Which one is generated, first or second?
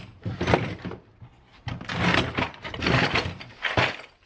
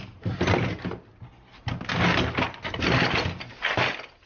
first